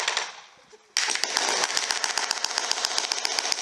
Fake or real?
real